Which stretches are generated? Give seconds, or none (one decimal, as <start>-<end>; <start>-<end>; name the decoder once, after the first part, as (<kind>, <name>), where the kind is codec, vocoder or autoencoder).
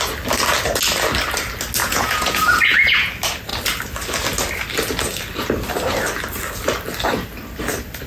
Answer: 1.8-3.1 (vocoder, Vocos)